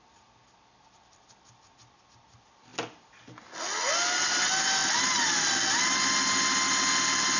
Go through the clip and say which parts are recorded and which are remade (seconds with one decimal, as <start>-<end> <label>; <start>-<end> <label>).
0.0-7.4 recorded